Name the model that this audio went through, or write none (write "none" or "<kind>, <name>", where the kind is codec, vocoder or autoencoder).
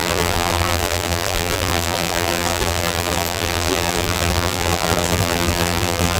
vocoder, BigVGAN v2